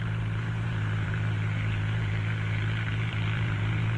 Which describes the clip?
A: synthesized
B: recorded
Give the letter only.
A